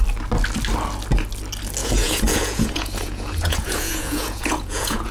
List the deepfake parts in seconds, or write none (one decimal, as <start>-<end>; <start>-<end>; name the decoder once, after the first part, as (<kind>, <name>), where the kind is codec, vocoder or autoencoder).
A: 1.8-5.1 (vocoder, Vocos)